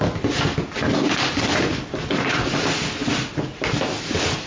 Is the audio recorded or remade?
recorded